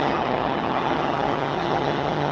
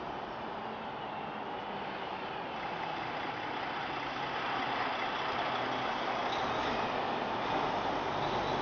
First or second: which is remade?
first